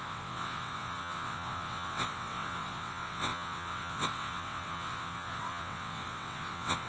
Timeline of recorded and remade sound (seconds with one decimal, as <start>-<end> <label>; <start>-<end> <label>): 0.0-6.9 remade